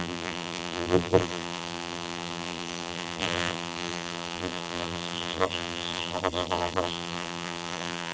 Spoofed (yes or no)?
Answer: yes